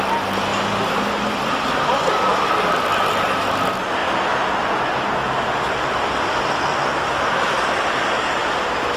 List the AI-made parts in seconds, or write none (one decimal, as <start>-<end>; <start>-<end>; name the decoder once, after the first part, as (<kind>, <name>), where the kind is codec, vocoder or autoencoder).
none